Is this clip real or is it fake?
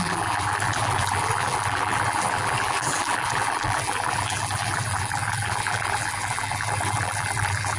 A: fake